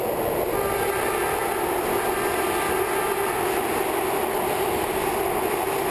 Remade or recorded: recorded